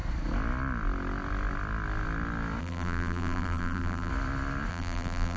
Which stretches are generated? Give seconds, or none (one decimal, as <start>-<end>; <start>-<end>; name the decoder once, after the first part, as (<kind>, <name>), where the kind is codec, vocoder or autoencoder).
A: 2.6-4.1 (vocoder, BigVGAN v2); 4.7-5.4